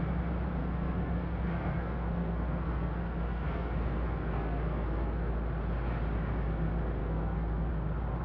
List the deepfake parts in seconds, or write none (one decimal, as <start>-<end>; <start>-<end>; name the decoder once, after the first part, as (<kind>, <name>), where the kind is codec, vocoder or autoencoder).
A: 0.6-5.3 (codec, SNAC); 7.0-7.7